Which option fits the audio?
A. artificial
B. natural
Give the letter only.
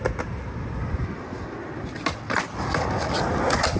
B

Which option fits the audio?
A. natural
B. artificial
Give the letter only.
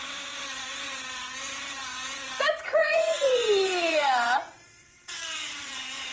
B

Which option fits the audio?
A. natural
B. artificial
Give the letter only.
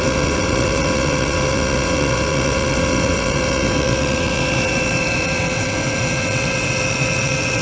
B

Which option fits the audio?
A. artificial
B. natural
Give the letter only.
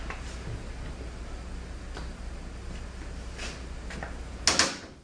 B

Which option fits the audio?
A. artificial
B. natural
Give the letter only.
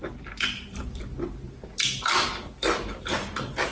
B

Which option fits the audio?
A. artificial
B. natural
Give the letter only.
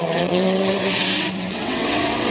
A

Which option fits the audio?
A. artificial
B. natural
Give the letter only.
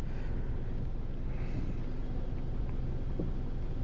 B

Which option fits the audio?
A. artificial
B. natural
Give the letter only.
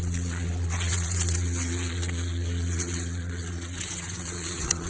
A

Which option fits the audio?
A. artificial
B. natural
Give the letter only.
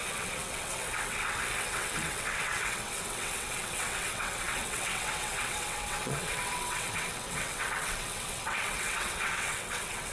A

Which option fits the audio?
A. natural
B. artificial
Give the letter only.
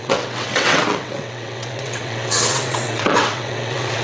B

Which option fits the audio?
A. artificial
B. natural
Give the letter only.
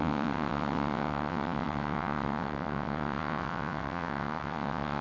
A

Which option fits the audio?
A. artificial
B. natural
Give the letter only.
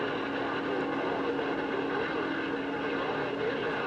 B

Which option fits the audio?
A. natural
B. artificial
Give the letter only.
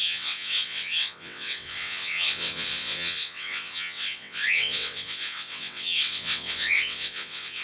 B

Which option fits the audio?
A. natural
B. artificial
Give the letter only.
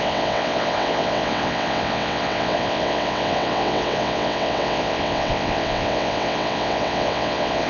B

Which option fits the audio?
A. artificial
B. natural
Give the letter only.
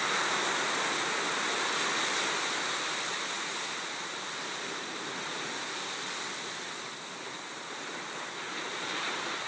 B